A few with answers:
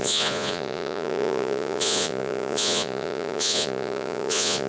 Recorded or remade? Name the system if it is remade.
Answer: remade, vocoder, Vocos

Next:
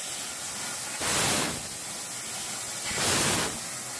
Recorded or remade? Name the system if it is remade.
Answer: recorded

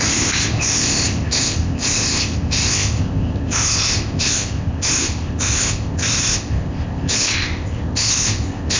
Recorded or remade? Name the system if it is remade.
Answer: remade, codec, ZipCodec